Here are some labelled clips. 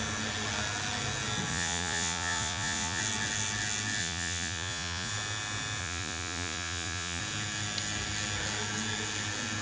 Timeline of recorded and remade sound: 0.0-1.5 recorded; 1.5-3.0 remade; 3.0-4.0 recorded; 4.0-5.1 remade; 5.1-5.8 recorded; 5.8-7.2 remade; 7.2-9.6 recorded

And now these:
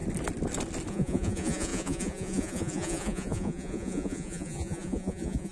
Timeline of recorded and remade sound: 0.0-0.9 recorded; 0.9-5.5 remade

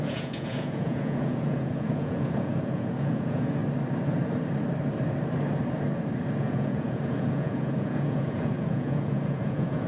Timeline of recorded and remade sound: 0.0-3.6 remade; 3.6-6.4 recorded; 6.4-9.9 remade

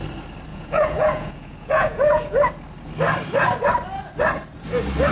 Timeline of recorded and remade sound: 0.0-0.5 recorded; 0.5-2.5 remade; 2.5-5.1 recorded

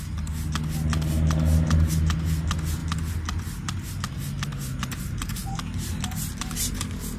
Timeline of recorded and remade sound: 0.0-7.2 recorded